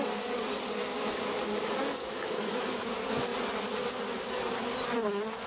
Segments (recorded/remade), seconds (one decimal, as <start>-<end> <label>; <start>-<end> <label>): 0.0-0.9 recorded; 0.9-1.4 remade; 1.4-2.0 recorded; 2.0-2.9 remade; 2.9-5.5 recorded